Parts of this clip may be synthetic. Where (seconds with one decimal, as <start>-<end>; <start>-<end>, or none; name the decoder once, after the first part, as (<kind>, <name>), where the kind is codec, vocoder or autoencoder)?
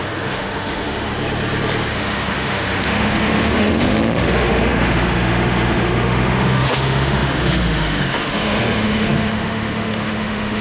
0.0-1.1 (autoencoder, DAC-VAE); 1.9-10.6